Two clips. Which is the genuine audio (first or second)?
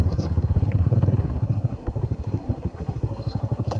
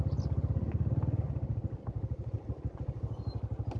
second